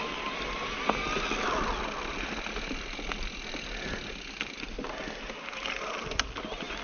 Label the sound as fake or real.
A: real